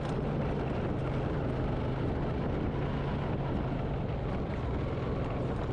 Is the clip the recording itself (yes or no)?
yes